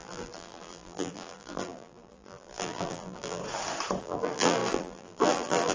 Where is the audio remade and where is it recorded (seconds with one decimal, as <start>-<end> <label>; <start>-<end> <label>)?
0.0-3.4 remade; 3.4-4.0 recorded; 4.0-5.7 remade